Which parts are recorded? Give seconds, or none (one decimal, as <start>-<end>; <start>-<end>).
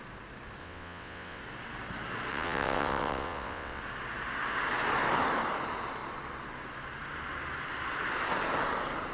0.0-0.6; 1.4-2.3; 3.8-9.1